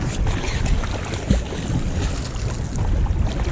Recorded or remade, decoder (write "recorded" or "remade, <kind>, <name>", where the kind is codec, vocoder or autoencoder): recorded